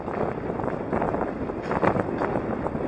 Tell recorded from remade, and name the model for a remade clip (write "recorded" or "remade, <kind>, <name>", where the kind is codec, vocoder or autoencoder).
recorded